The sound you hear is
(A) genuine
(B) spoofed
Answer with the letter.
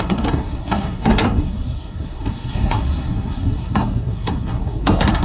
B